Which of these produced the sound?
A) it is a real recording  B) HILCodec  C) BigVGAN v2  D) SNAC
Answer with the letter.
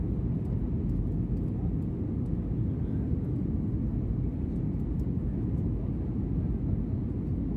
A